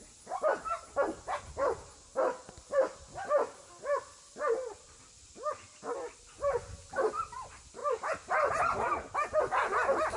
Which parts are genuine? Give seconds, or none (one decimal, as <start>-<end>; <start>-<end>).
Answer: 0.0-10.2